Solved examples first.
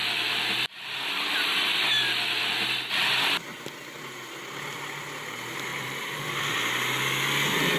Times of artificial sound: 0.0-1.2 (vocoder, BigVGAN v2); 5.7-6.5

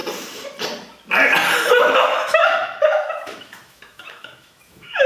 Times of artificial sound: 1.7-5.1 (autoencoder, DAC-VAE)

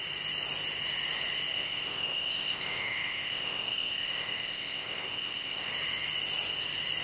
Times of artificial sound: 1.5-5.7 (codec, ZipCodec)

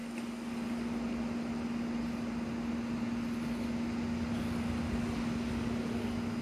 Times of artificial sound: none

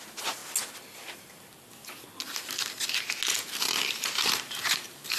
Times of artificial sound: 0.0-0.4 (vocoder, BigVGAN v2); 3.5-5.2

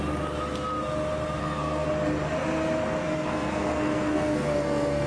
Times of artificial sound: 1.4-1.9 (codec, SNAC); 3.0-5.1

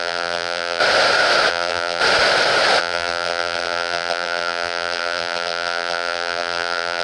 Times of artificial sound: 0.0-0.8 (vocoder, BigVGAN v2); 1.5-2.0; 2.8-7.0